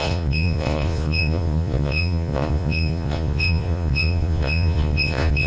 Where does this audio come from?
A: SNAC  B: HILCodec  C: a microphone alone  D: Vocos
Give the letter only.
D